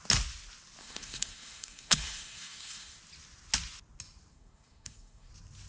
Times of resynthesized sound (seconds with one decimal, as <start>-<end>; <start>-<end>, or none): 0.8-3.0; 4.3-5.3